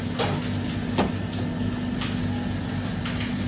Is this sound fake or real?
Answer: real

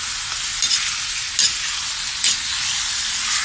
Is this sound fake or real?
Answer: real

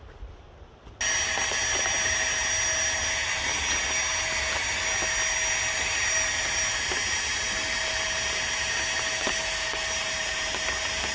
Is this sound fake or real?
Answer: real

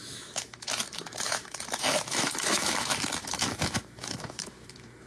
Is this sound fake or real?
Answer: fake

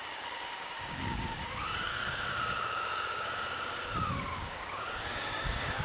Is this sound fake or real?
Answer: fake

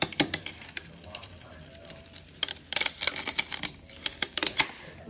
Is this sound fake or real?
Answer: fake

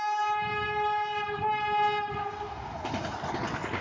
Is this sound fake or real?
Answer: real